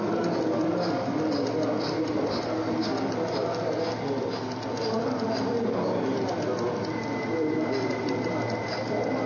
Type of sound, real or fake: real